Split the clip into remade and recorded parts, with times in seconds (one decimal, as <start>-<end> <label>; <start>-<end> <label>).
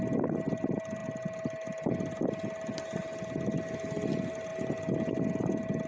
0.0-5.9 recorded